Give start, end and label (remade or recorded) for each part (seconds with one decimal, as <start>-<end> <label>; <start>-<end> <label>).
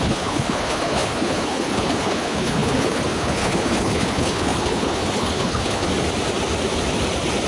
0.0-5.9 remade; 5.9-7.5 recorded